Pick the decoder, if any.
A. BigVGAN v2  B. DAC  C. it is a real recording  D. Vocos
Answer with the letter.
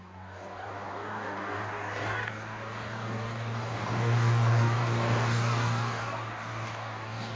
B